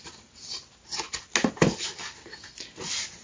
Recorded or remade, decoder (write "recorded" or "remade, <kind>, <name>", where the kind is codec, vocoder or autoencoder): recorded